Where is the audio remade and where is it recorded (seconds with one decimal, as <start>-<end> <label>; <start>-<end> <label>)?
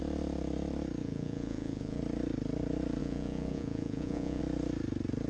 0.0-1.0 recorded; 1.0-2.0 remade; 2.0-3.0 recorded; 3.0-4.4 remade; 4.4-5.3 recorded